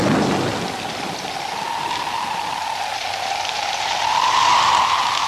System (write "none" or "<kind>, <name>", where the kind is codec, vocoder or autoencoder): none